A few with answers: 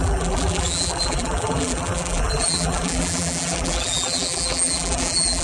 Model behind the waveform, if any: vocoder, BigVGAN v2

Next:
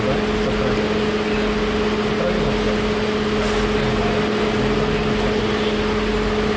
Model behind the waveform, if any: none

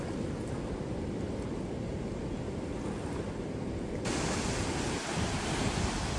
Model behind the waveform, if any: none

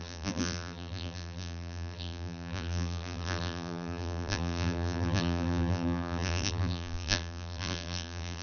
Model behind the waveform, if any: vocoder, BigVGAN v2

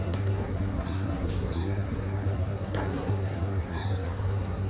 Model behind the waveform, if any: codec, SNAC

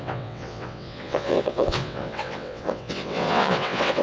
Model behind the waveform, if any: vocoder, WaveNeXt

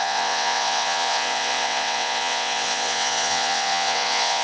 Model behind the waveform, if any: vocoder, WaveNeXt